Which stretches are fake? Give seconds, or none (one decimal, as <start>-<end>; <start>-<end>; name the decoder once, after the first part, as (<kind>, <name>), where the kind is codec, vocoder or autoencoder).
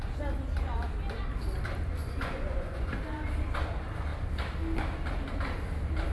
2.0-2.9 (vocoder, Vocos)